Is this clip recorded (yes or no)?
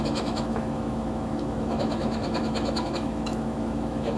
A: no